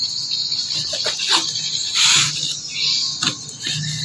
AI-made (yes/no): no